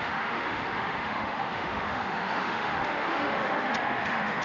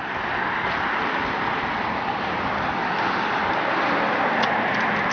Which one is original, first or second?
second